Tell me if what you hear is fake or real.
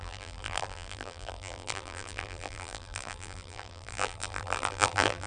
fake